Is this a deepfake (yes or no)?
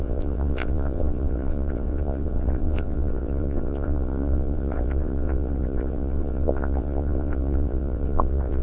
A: yes